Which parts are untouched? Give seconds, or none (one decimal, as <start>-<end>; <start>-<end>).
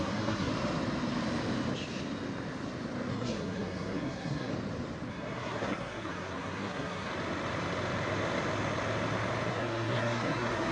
0.5-3.1; 4.5-5.1; 7.1-9.5